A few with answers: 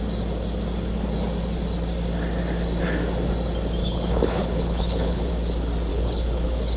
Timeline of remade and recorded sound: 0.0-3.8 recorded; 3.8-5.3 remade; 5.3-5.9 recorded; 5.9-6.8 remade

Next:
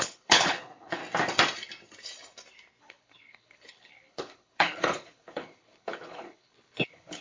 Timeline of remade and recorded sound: 0.0-1.0 remade; 1.0-2.8 recorded; 2.8-7.2 remade

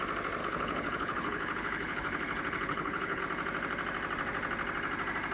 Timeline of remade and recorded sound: 0.0-0.4 recorded; 0.4-3.2 remade; 3.2-5.3 recorded

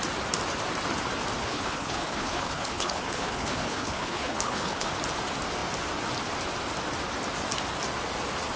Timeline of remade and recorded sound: 0.0-1.4 recorded; 1.4-4.9 remade; 4.9-8.6 recorded

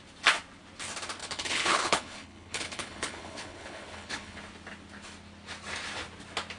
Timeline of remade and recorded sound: 0.0-1.2 recorded; 1.2-4.4 remade; 4.4-6.6 recorded

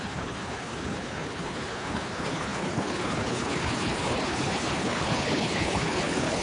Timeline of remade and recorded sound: 0.0-6.4 remade

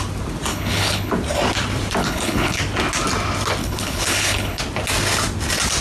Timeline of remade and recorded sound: 0.0-0.5 recorded; 0.5-1.1 remade; 1.1-2.0 recorded; 2.0-2.6 remade; 2.6-3.6 recorded; 3.6-4.6 remade; 4.6-5.8 recorded